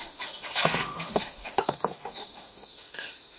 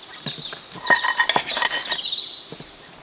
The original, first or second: second